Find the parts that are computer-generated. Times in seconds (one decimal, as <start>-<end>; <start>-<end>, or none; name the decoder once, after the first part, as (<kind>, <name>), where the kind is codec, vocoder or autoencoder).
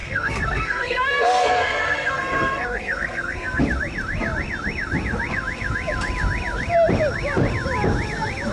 0.0-3.6 (codec, SNAC)